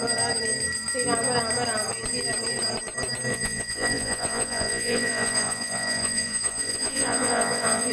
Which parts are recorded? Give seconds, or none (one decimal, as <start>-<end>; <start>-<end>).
0.0-3.3